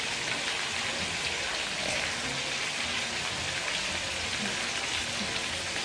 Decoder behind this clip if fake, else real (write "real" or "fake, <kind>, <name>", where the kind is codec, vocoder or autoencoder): real